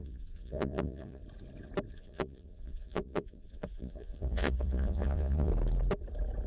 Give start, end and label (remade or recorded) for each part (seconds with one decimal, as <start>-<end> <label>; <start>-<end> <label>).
0.0-1.2 remade; 1.2-1.9 recorded; 1.9-5.5 remade; 5.5-6.5 recorded